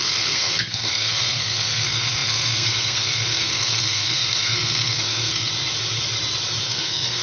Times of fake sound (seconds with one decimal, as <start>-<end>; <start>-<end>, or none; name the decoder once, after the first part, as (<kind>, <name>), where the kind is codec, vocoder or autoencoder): 0.0-5.5 (codec, SNAC); 6.6-7.2